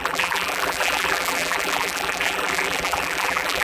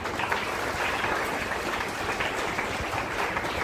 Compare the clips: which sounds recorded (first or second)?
second